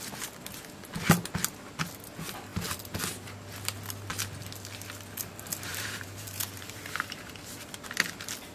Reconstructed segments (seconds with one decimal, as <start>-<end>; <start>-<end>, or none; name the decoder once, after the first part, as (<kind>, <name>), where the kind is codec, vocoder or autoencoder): 5.7-7.3 (vocoder, BigVGAN v2)